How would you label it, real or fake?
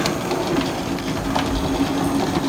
real